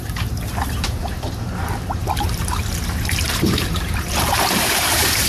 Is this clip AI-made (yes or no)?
yes